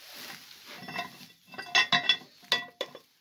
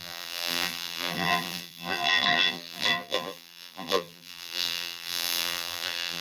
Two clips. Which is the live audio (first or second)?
first